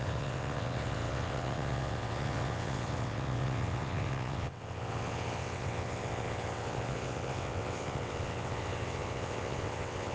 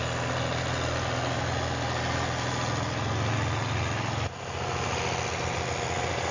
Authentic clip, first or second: second